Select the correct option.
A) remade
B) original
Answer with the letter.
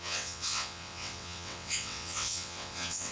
A